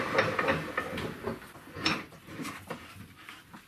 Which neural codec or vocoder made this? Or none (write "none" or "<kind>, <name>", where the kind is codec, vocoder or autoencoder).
none